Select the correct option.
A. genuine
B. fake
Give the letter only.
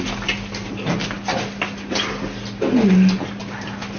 A